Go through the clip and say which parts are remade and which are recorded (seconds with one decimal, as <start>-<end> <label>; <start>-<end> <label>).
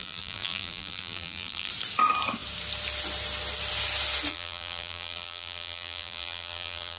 0.0-1.7 remade; 1.7-4.3 recorded; 4.3-7.0 remade